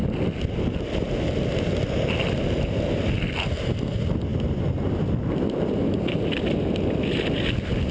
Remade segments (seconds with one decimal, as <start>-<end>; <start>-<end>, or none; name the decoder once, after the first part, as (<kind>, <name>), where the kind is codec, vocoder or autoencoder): none